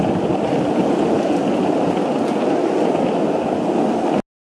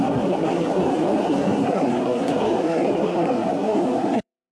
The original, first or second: first